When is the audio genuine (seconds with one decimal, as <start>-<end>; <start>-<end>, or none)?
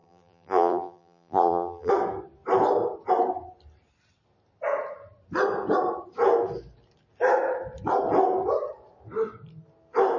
1.9-10.2